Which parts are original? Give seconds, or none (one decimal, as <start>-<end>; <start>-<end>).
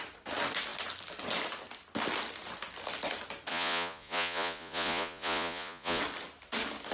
0.0-3.5; 6.0-6.9